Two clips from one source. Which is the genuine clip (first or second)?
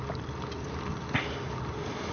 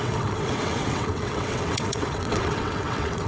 first